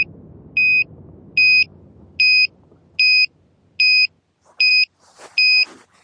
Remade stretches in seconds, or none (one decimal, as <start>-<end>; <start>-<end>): none